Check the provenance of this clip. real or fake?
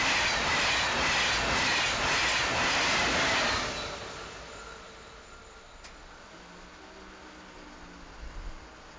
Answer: real